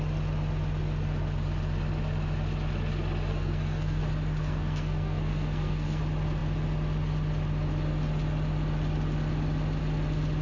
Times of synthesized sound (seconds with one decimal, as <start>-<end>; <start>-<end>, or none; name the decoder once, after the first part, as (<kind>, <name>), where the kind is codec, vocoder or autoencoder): 3.3-4.0 (codec, SNAC); 4.4-6.0